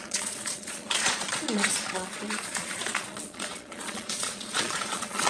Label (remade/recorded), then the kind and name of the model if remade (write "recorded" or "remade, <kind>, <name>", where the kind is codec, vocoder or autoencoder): remade, vocoder, Vocos